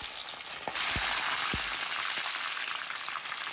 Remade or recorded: recorded